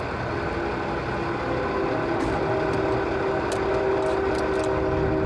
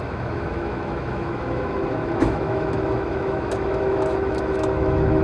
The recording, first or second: first